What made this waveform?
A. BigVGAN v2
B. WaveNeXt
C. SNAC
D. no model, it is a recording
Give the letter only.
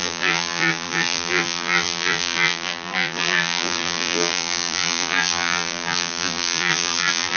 A